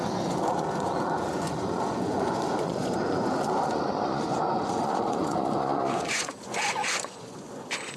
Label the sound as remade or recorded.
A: remade